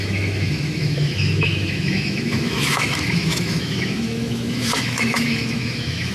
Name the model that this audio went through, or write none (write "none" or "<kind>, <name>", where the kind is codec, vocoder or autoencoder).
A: autoencoder, DAC-VAE